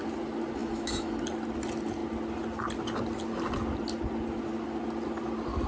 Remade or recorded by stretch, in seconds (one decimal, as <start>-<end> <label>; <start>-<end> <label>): 0.0-0.6 recorded; 0.6-1.1 remade; 1.1-5.7 recorded